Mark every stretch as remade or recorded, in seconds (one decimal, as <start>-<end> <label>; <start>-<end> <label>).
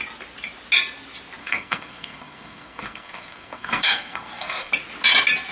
0.0-1.4 recorded; 1.4-4.7 remade; 4.7-5.5 recorded